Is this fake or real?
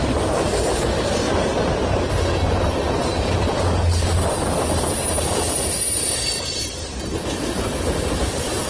real